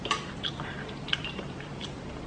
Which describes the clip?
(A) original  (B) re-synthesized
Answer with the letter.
A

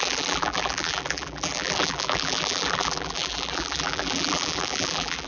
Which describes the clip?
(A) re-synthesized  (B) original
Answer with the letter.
A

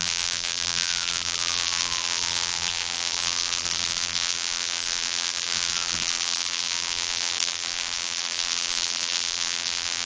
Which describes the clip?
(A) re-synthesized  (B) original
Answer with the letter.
A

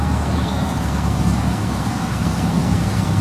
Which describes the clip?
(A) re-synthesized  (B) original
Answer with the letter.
A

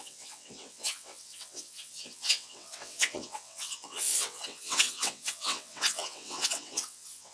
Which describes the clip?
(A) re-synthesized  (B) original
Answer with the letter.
A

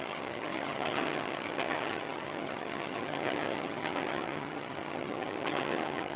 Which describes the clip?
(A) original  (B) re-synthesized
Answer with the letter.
B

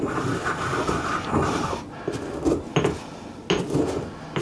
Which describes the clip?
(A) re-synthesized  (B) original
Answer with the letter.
B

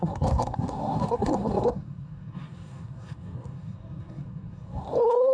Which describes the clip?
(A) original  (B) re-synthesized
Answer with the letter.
B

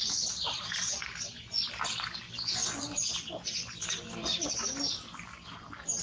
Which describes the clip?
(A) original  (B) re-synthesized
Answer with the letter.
A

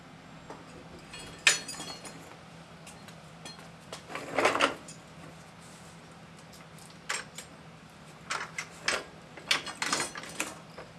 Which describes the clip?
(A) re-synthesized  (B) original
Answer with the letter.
B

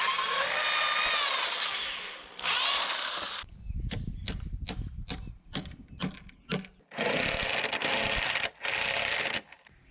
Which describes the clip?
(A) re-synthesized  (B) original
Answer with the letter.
B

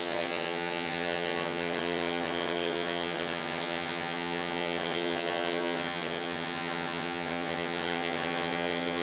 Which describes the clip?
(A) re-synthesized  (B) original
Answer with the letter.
A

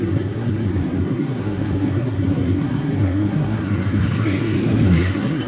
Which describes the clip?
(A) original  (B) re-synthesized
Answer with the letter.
B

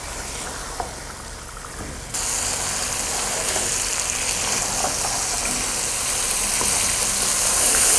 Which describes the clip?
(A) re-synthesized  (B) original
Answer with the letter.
B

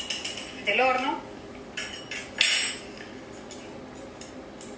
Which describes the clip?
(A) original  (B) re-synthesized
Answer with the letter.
A